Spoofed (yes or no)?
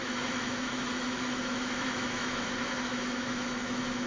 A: yes